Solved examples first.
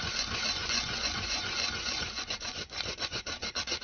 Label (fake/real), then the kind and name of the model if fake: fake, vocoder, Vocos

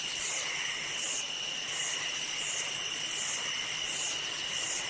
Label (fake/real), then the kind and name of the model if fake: real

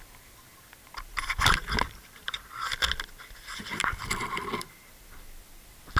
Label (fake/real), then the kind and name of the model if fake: real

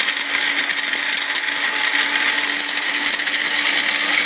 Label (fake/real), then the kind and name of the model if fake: real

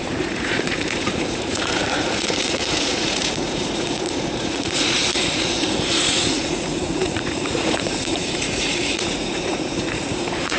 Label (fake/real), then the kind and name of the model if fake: fake, vocoder, Vocos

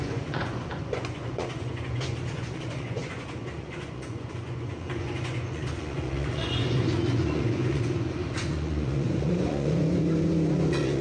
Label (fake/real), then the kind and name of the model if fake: fake, vocoder, Vocos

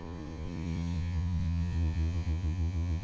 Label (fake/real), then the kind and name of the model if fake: fake, vocoder, Vocos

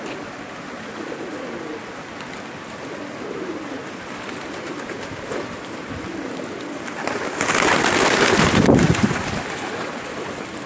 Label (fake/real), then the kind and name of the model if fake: real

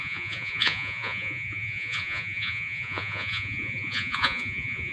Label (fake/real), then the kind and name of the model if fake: fake, vocoder, Vocos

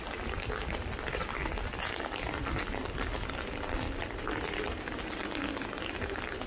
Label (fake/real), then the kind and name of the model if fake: real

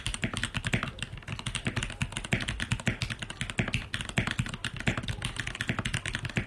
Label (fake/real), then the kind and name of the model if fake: real